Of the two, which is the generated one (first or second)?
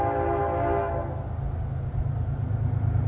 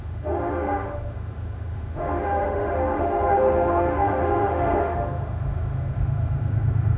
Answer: second